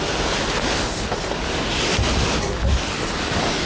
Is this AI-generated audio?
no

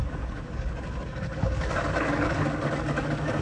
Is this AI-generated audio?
yes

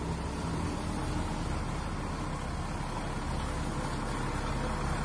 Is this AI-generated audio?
no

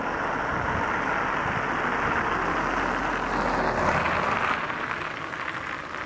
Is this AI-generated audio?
no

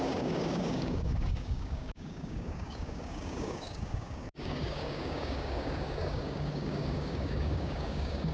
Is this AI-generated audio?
yes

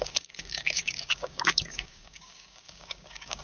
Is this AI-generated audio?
yes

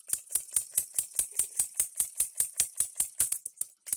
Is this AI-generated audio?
no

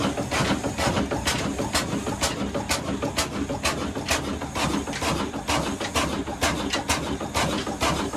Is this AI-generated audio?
no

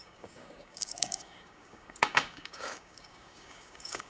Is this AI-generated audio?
yes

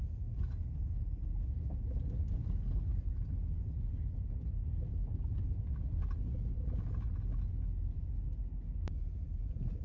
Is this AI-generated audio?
no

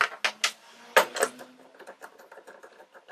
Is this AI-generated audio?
no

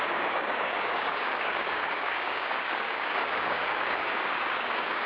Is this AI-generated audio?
yes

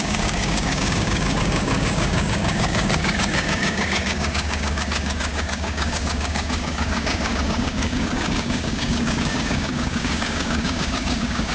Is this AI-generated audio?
yes